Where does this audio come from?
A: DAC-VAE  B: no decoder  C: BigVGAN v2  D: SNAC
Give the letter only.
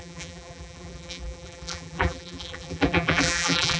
C